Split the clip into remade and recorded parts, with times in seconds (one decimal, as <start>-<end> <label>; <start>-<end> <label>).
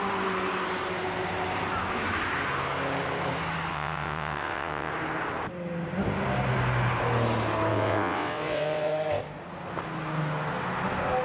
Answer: 0.0-3.7 recorded; 3.7-4.9 remade; 4.9-7.7 recorded; 7.7-8.9 remade; 8.9-11.2 recorded